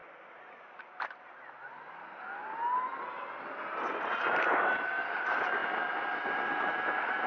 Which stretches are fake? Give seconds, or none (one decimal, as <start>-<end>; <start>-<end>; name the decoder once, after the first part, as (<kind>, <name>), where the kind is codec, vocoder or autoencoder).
none